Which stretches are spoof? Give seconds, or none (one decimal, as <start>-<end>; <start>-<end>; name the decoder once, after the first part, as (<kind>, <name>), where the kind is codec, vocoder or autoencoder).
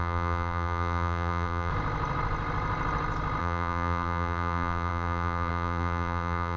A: 0.0-1.7 (vocoder, BigVGAN v2); 3.4-6.6